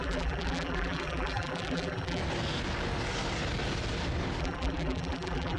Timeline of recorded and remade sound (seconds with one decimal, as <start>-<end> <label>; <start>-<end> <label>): 0.0-2.2 remade; 2.2-4.4 recorded; 4.4-5.6 remade